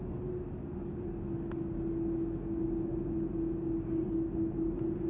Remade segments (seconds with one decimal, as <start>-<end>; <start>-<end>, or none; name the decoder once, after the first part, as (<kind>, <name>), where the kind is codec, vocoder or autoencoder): none